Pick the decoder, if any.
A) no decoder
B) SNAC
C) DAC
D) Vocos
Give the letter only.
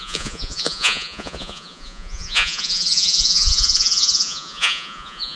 D